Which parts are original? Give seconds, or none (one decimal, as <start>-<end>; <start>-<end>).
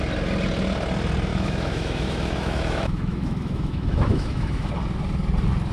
0.0-1.3; 4.7-5.7